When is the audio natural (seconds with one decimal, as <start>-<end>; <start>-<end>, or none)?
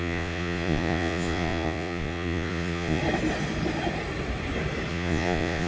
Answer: 3.0-4.9